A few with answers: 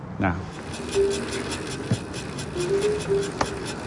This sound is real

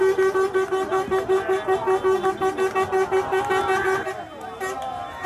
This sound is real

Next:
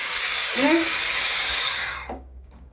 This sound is fake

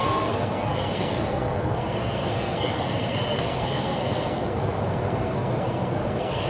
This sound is fake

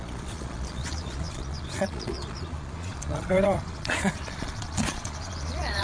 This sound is fake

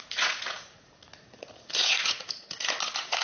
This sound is fake